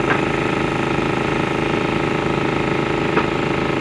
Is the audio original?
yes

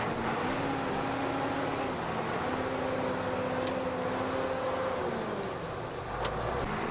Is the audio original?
yes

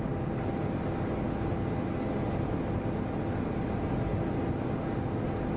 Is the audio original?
yes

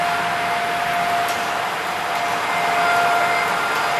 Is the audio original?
yes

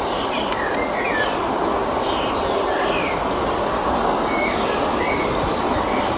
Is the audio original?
yes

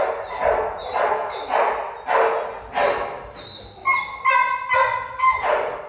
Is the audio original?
yes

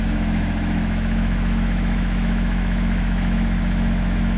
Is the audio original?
no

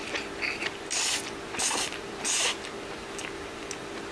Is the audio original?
yes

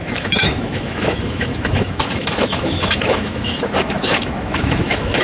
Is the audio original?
no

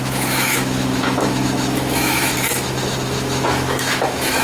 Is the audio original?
no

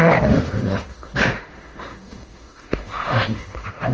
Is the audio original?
no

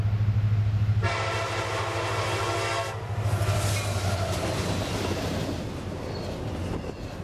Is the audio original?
yes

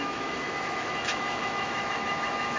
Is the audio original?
no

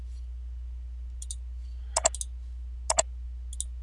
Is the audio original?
yes